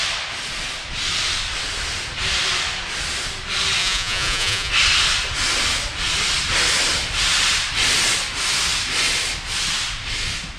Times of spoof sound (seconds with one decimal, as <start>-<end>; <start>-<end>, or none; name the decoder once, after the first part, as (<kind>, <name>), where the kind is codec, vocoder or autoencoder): 3.8-4.7 (vocoder, Vocos)